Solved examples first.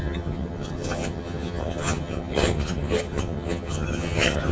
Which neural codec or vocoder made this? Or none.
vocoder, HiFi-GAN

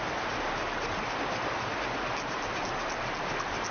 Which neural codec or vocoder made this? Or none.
none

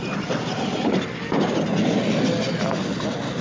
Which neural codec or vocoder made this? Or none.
none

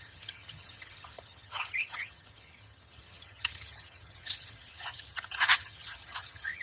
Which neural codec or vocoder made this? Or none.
vocoder, HiFi-GAN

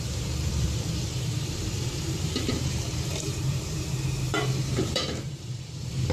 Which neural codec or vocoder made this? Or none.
vocoder, BigVGAN v2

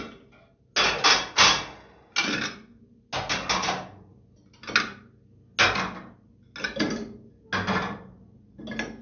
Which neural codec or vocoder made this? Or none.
none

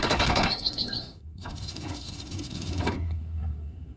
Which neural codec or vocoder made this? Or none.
codec, SNAC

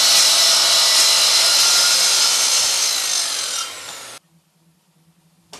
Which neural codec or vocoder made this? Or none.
none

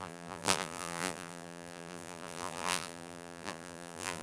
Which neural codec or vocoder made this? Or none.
vocoder, BigVGAN v2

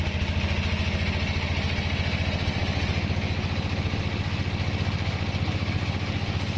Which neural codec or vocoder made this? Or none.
none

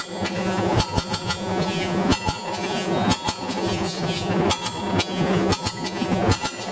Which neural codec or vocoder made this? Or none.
vocoder, Vocos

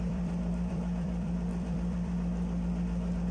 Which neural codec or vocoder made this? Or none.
vocoder, BigVGAN v2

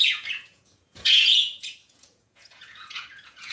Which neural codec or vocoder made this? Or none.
vocoder, Vocos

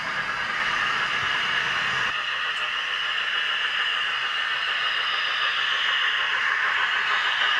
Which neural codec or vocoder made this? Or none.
vocoder, BigVGAN v2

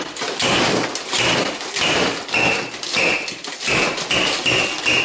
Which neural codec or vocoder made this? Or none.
none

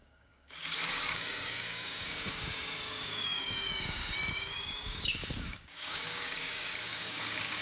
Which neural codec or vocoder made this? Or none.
codec, DAC